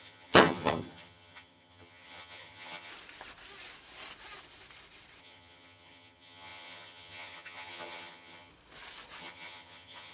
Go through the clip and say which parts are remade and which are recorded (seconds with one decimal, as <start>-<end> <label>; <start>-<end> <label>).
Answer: 0.0-2.9 remade; 2.9-5.2 recorded; 5.2-8.5 remade; 8.5-9.2 recorded; 9.2-10.1 remade